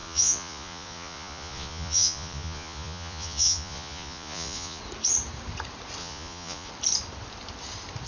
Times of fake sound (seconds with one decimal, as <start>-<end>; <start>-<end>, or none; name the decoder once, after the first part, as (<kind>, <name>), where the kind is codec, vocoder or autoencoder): 0.0-4.8 (vocoder, Vocos); 6.0-6.7